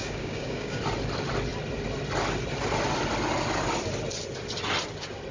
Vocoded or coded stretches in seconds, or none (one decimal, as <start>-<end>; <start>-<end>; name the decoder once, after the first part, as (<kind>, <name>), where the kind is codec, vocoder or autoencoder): 0.0-0.8 (codec, DAC)